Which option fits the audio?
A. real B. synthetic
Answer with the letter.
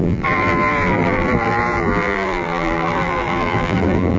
B